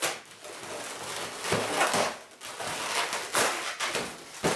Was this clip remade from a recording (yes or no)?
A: no